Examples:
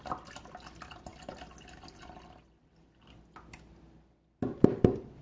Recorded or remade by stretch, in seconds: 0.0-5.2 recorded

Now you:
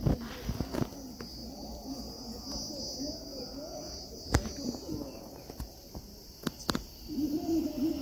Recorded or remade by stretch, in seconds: 0.0-8.0 recorded